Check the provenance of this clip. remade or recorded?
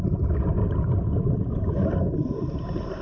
recorded